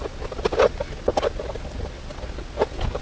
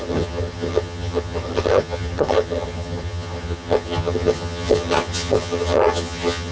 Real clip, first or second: first